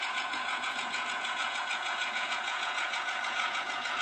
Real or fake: fake